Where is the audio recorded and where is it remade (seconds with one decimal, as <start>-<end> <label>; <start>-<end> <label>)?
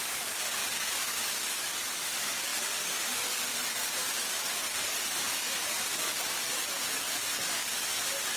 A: 0.0-8.4 remade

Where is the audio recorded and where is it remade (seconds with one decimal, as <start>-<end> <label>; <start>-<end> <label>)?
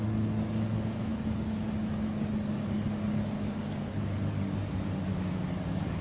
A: 0.0-6.0 remade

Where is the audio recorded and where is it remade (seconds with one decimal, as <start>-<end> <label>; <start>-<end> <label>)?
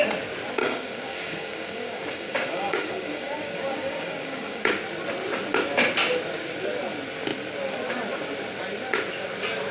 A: 0.0-0.6 recorded; 0.6-4.6 remade; 4.6-9.7 recorded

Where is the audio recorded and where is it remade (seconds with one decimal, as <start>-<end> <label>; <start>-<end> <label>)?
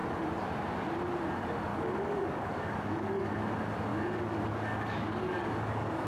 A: 0.0-1.7 recorded; 1.7-3.3 remade; 3.3-3.9 recorded; 3.9-6.1 remade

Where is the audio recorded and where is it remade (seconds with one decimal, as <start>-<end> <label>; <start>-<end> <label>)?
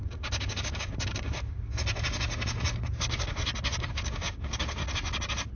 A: 0.0-1.7 remade; 1.7-3.0 recorded; 3.0-3.4 remade; 3.4-3.9 recorded; 3.9-4.8 remade; 4.8-5.6 recorded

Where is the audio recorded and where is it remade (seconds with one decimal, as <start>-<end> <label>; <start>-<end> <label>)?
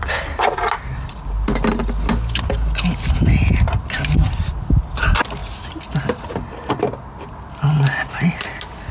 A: 0.0-8.9 recorded